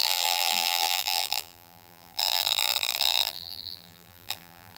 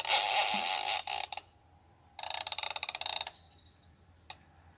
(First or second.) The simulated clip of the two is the first